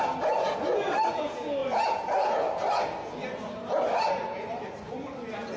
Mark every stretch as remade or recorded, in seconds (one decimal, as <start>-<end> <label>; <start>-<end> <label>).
0.0-5.6 recorded